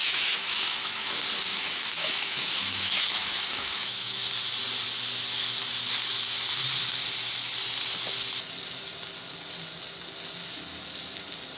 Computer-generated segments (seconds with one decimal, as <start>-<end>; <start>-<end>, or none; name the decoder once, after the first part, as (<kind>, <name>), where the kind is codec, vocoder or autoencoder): 0.0-1.1 (autoencoder, DAC-VAE); 1.5-4.3

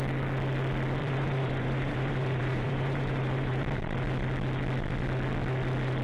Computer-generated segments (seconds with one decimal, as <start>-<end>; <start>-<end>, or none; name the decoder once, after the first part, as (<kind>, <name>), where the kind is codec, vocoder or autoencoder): 1.0-3.8 (vocoder, BigVGAN v2)

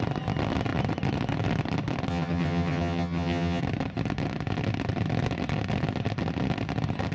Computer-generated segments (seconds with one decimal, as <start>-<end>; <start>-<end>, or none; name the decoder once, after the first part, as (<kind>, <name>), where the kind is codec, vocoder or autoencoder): 2.1-3.6 (vocoder, HiFi-GAN)

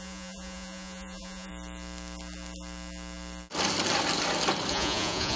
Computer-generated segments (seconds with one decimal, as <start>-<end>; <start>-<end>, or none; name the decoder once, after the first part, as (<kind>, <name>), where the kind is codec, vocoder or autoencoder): 0.0-1.5 (vocoder, Vocos); 4.7-5.4

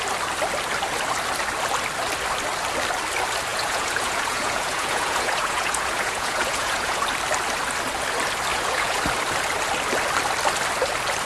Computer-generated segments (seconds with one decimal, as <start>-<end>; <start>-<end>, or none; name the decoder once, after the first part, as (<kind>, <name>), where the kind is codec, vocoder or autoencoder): 3.5-7.0 (vocoder, Vocos); 8.5-9.0

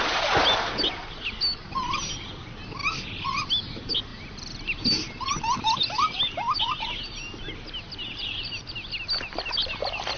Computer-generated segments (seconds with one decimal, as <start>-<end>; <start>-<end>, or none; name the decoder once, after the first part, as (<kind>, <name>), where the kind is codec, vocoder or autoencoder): none